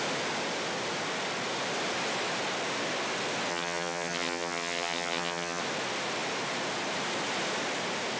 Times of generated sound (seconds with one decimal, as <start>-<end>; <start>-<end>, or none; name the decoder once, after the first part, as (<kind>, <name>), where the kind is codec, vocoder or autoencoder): 3.5-5.6 (vocoder, HiFi-GAN)